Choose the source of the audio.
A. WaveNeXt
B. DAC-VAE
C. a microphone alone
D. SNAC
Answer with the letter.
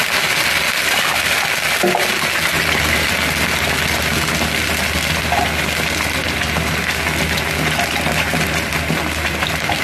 C